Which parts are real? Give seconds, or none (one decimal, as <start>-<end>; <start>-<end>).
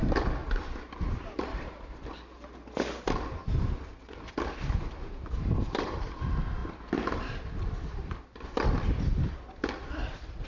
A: 0.0-0.4; 2.0-6.6; 7.4-10.5